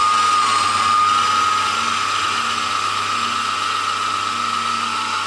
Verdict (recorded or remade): recorded